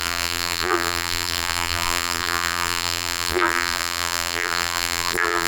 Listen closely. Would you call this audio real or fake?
fake